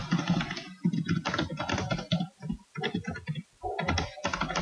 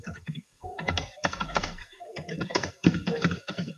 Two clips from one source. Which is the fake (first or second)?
second